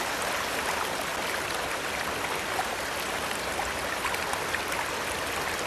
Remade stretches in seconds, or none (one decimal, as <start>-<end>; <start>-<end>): none

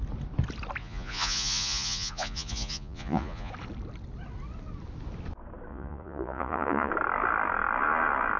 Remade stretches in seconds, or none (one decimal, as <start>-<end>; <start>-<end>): 0.8-3.5; 5.7-6.9

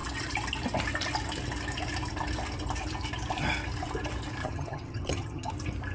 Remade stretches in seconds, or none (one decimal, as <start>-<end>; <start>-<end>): 4.4-5.5

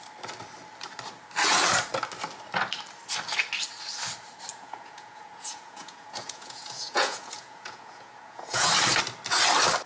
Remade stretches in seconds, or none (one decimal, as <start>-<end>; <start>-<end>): 4.5-8.7

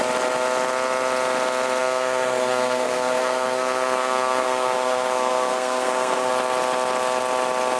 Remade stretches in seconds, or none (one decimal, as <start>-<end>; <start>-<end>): 1.8-6.3